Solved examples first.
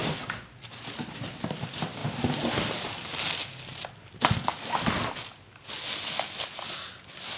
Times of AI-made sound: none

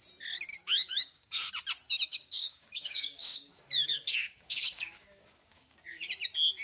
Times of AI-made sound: 0.5-1.5 (codec, DAC); 2.1-6.1

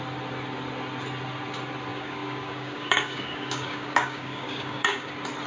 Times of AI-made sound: 1.9-5.1 (codec, DAC)

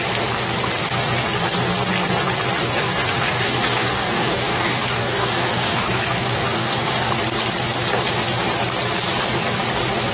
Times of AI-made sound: 2.7-7.1 (codec, DAC)

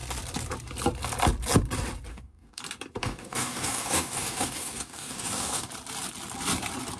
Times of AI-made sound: 2.1-2.6 (codec, DAC); 3.0-5.7

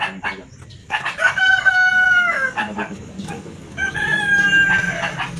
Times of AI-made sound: 0.8-4.0 (codec, DAC)